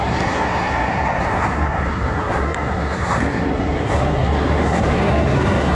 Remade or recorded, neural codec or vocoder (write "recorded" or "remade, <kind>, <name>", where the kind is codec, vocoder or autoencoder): remade, codec, SNAC